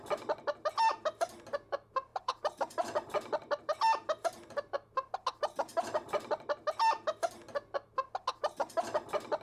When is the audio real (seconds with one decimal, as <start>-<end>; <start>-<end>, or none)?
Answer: 0.0-2.1; 4.7-5.7; 6.3-9.4